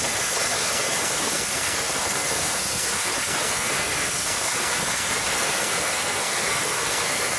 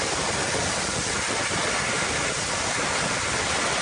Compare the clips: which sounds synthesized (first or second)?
first